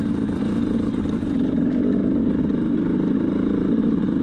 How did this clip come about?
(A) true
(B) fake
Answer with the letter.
B